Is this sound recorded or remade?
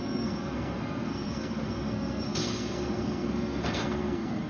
remade